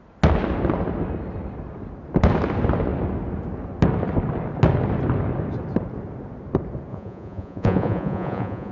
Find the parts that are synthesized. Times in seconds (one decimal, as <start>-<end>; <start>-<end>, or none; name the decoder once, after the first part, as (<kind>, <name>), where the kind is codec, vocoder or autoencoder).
6.9-8.7 (vocoder, Vocos)